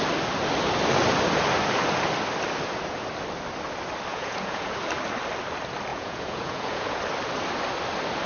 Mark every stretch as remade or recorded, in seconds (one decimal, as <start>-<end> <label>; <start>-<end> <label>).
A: 0.0-4.1 recorded; 4.1-4.8 remade; 4.8-5.9 recorded; 5.9-7.0 remade; 7.0-8.3 recorded

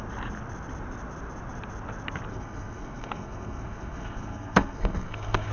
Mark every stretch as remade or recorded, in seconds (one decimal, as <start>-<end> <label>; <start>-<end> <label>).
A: 0.0-2.3 recorded; 2.3-5.5 remade

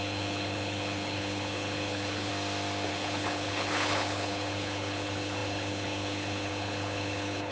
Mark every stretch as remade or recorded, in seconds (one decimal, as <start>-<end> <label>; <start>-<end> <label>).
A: 0.0-2.3 remade; 2.3-2.9 recorded; 2.9-7.5 remade